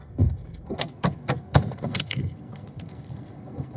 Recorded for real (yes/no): no